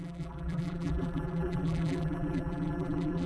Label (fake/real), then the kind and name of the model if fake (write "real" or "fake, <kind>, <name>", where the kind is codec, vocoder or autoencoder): fake, vocoder, BigVGAN v2